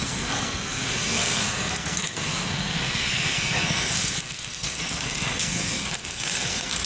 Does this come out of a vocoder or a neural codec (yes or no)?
yes